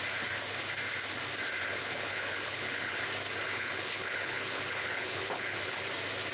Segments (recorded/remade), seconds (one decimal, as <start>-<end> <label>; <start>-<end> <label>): 0.0-1.6 recorded; 1.6-3.0 remade; 3.0-3.5 recorded; 3.5-5.8 remade; 5.8-6.3 recorded